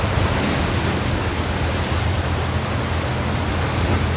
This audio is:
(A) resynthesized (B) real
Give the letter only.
B